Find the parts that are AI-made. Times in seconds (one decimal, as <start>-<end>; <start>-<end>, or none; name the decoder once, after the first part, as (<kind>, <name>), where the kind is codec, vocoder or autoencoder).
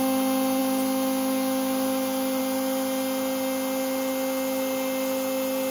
none